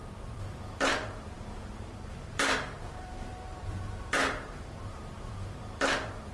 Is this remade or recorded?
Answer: remade